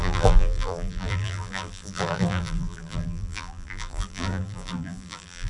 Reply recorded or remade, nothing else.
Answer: remade